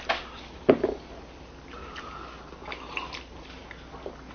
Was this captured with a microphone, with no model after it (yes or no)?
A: yes